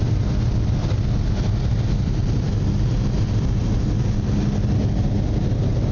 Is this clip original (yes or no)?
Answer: yes